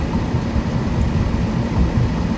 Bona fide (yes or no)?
yes